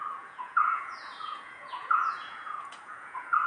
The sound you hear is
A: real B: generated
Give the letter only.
B